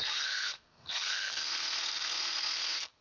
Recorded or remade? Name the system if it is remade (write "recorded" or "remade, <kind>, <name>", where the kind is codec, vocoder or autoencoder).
remade, codec, SNAC